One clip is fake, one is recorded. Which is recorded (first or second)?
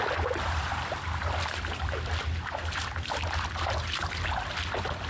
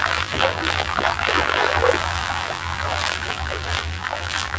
first